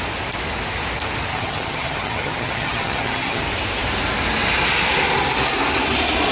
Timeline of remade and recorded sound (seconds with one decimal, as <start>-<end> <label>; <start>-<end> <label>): 0.0-1.3 recorded; 1.3-3.4 remade; 3.4-6.3 recorded